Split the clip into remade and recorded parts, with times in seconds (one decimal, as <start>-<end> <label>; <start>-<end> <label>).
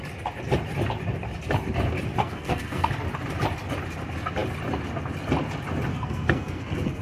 0.0-2.2 recorded; 2.2-2.9 remade; 2.9-5.9 recorded; 5.9-7.0 remade